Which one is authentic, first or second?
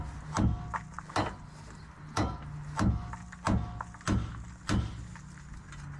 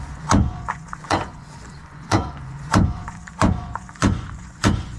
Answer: first